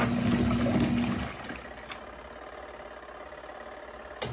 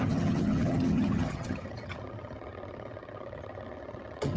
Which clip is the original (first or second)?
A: first